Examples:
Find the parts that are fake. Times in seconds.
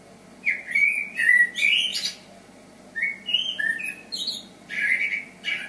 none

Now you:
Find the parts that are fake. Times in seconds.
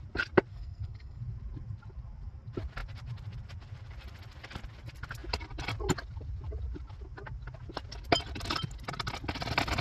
0.5-1.2 (codec, SNAC)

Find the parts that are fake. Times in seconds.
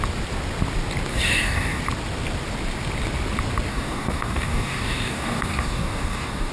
1.1-1.8 (codec, DAC); 3.7-6.5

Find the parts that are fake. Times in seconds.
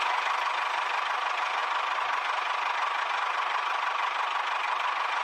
none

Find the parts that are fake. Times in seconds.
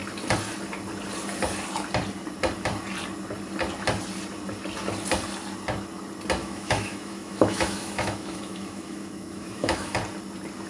6.4-10.0 (autoencoder, DAC-VAE)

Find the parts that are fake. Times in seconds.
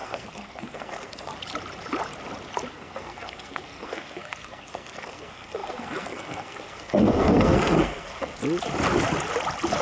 0.0-1.3 (codec, SNAC); 2.7-8.4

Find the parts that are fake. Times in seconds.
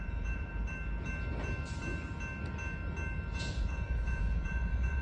0.0-0.5 (vocoder, Vocos); 3.5-5.0